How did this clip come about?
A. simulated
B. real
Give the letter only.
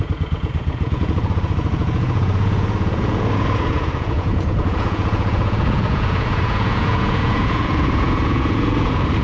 A